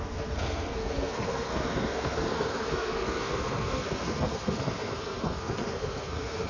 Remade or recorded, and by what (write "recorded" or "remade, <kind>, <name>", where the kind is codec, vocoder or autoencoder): remade, codec, SNAC